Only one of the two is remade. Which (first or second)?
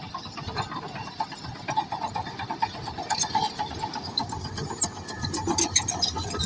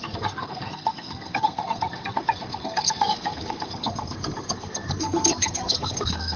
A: second